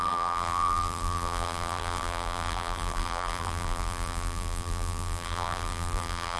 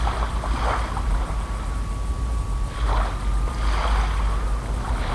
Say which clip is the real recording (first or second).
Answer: second